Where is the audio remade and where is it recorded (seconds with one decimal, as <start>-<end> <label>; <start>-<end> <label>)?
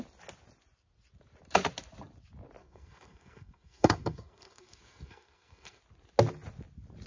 0.0-2.6 recorded; 2.6-5.8 remade; 5.8-7.1 recorded